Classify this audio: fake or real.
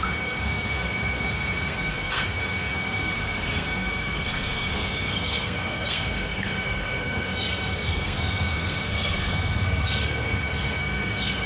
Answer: fake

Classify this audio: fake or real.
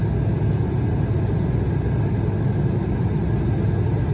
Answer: real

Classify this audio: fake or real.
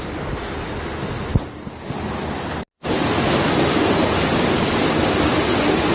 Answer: real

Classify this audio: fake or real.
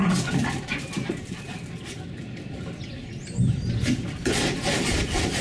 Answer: real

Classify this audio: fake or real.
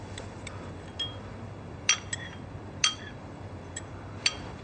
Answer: real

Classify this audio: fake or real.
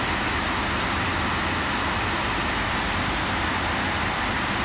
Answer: real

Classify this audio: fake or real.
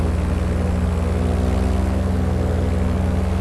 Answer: real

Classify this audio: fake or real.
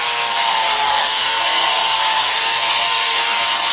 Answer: fake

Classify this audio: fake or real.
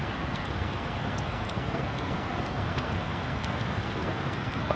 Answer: fake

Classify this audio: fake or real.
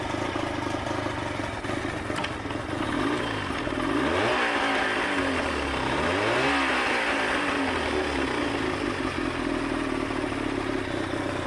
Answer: real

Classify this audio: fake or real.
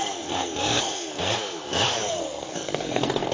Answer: fake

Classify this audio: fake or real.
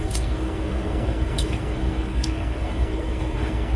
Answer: fake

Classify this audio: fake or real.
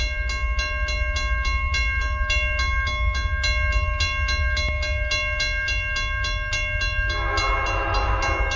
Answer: real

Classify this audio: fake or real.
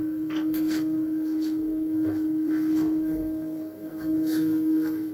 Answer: fake